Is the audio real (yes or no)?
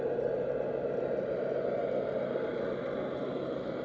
yes